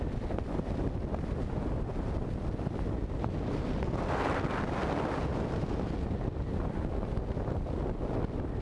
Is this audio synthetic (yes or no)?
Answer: no